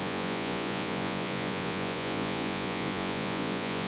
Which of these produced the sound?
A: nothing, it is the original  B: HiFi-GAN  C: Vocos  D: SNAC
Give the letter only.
C